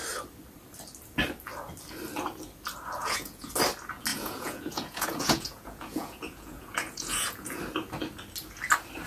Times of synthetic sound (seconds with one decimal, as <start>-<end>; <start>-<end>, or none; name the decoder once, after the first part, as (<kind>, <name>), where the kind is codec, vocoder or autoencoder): 3.0-3.5 (vocoder, Vocos); 4.1-7.6